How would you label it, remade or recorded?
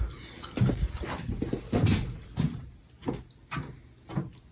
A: recorded